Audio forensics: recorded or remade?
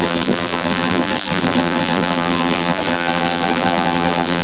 remade